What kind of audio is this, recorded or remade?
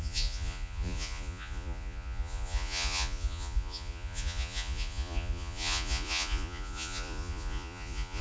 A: remade